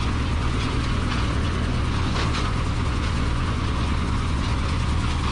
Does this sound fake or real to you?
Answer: fake